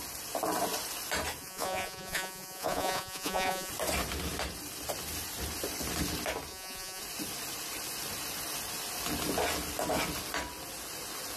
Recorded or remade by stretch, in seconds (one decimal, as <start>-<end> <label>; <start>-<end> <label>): 0.0-1.4 recorded; 1.4-3.7 remade; 3.7-6.5 recorded; 6.5-7.0 remade; 7.0-11.4 recorded